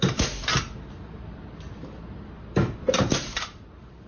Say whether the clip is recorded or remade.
recorded